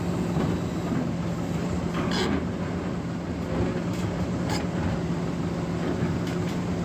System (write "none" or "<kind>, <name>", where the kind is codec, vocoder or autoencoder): none